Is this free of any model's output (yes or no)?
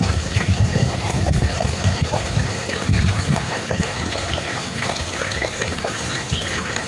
no